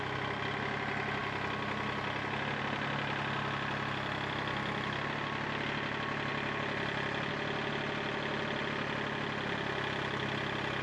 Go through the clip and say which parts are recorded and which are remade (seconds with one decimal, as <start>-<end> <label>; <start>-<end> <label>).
0.0-10.8 recorded